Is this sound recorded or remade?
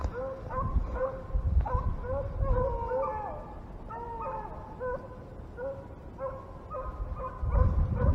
recorded